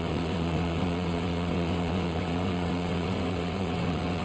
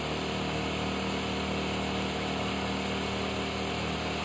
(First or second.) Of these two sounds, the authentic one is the second